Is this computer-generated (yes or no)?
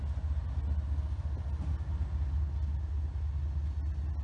no